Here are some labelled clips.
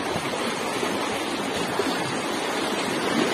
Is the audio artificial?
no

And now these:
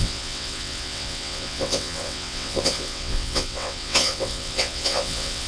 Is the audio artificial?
yes